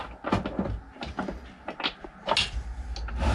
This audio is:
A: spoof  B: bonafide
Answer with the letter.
B